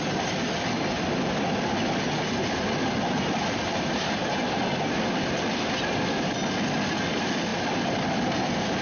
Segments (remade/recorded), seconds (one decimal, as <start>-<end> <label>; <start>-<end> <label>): 0.0-8.8 recorded